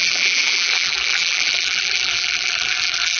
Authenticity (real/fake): fake